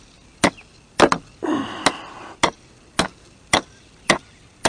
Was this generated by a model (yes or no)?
no